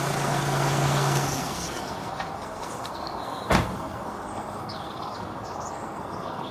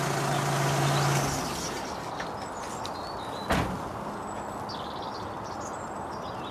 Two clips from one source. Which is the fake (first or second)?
first